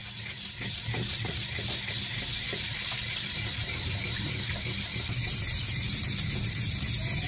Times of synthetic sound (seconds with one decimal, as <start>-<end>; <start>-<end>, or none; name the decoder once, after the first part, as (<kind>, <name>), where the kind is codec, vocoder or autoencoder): 3.6-7.3 (vocoder, BigVGAN v2)